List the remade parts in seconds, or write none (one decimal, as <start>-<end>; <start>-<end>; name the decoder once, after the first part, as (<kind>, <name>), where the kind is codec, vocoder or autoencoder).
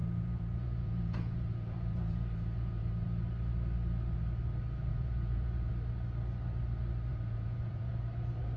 0.0-3.2 (vocoder, Vocos); 4.9-5.7; 7.1-7.9